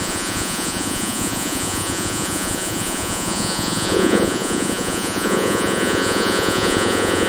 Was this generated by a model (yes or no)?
yes